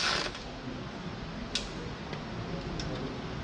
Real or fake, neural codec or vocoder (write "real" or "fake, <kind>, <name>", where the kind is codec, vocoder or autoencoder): real